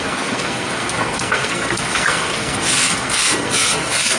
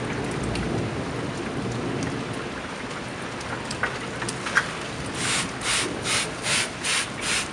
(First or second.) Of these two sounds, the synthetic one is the first